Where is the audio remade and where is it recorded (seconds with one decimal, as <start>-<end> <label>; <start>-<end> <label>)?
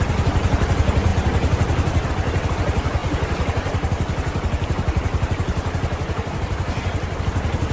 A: 0.0-7.7 recorded